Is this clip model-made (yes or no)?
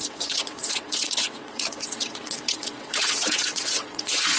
yes